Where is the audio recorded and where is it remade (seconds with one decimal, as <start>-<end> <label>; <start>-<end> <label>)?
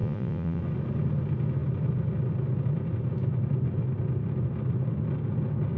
0.0-0.6 remade; 0.6-5.8 recorded